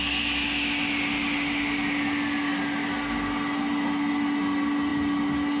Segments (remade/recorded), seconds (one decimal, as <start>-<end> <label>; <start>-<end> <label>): 0.0-5.6 recorded